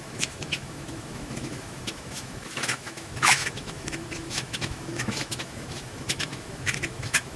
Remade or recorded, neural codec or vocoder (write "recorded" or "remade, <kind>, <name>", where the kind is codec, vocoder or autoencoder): remade, autoencoder, DAC-VAE